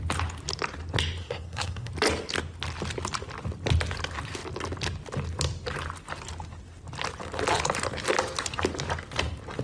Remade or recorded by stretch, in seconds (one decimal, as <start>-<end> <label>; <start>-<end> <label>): 0.0-1.2 recorded; 1.2-1.9 remade; 1.9-9.6 recorded